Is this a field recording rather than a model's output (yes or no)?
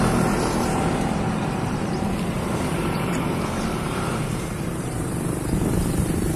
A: no